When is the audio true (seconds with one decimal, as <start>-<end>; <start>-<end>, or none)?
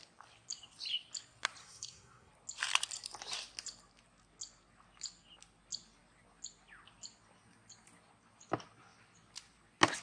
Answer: 0.0-1.6; 2.3-10.0